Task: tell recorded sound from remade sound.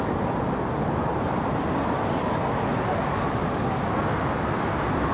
recorded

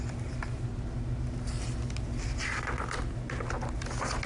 recorded